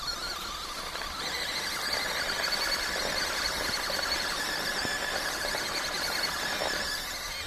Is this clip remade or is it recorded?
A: recorded